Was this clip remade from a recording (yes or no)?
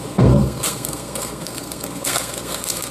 yes